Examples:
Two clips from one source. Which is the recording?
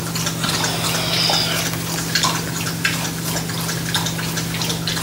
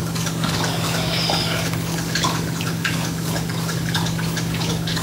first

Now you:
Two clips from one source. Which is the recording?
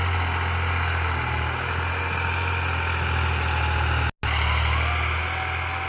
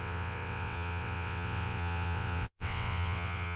first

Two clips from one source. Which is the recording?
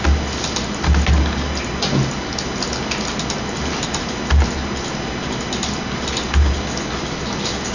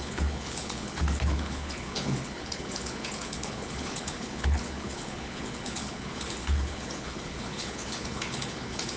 first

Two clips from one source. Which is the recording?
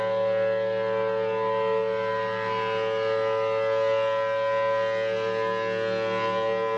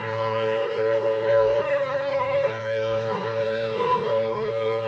first